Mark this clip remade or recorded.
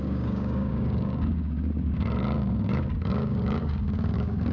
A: remade